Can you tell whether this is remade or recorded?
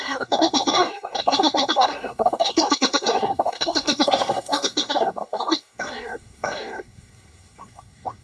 remade